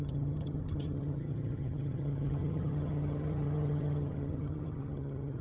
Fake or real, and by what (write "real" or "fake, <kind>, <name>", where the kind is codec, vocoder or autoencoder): fake, vocoder, HiFi-GAN